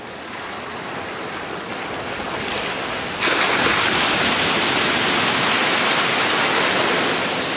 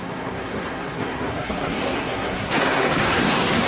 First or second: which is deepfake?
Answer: second